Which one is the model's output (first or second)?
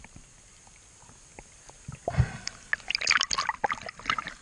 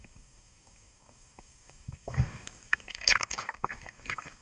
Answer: second